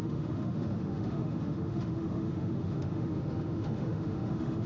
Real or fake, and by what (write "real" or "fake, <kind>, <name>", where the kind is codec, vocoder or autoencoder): fake, autoencoder, DAC-VAE